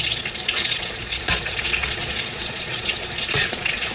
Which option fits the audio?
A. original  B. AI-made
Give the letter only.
B